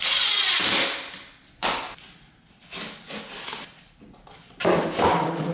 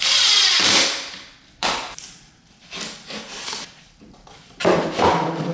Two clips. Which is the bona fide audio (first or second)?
first